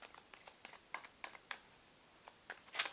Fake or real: real